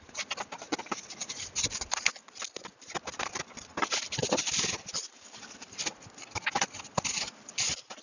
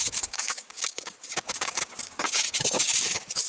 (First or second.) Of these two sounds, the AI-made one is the second